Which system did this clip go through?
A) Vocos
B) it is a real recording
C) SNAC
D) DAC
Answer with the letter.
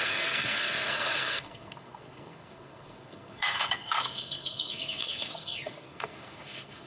C